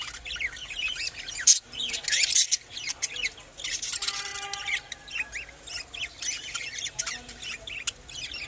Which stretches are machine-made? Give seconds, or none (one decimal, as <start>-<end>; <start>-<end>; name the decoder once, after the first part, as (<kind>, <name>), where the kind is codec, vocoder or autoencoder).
none